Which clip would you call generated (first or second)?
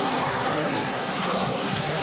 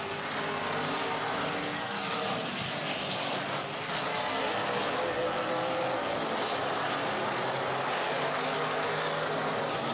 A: first